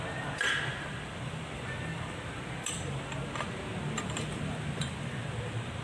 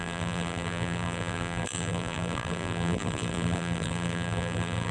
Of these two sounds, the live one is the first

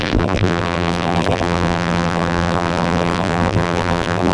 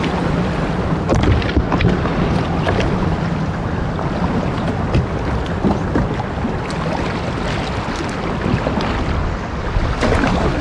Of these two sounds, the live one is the second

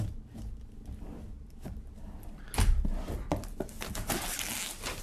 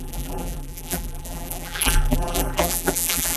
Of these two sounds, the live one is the first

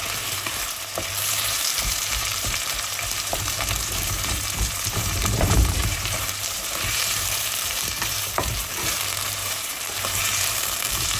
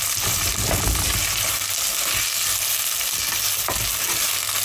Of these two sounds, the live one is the second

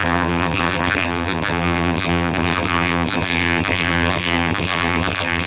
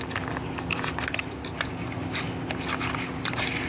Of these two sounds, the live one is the second